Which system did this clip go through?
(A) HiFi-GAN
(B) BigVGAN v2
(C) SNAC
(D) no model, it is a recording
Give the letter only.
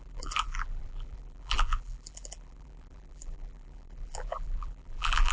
B